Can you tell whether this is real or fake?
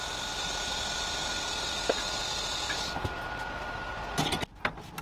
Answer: real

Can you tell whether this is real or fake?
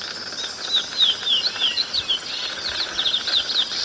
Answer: fake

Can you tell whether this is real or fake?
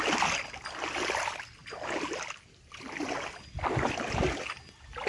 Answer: real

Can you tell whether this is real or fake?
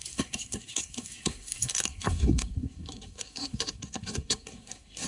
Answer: fake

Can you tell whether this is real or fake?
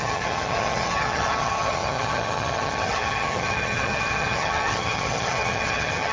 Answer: fake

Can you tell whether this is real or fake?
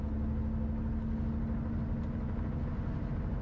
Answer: real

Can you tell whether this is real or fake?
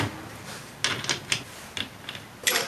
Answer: real